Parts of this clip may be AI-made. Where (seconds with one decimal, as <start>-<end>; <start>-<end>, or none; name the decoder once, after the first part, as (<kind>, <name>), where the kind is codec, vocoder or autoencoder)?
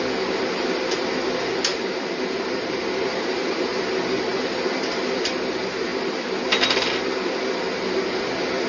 1.7-3.9 (vocoder, BigVGAN v2)